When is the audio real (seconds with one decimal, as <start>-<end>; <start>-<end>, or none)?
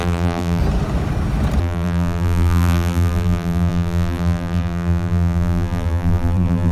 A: 0.6-1.6